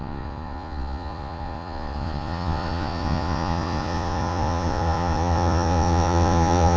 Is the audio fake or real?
fake